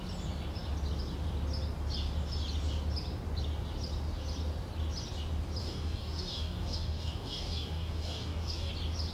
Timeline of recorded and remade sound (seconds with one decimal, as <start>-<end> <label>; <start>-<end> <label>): 0.0-5.6 recorded; 5.6-8.7 remade; 8.7-9.1 recorded